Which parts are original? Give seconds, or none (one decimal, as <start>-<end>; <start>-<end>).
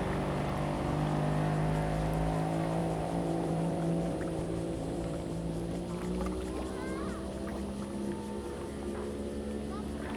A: 0.0-2.8; 5.8-10.2